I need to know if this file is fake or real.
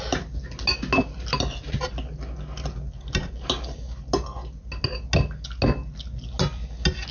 real